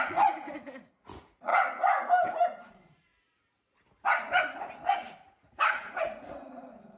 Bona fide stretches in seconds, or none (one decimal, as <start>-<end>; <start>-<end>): 1.5-2.3; 3.1-4.6